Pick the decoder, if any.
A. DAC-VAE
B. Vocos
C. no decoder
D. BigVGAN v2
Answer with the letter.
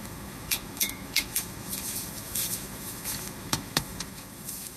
A